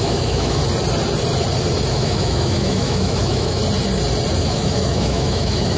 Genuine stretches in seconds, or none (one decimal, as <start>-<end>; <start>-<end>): 0.6-1.9; 3.6-4.4